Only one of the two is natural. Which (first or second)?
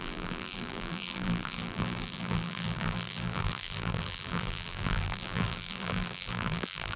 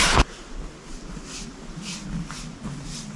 second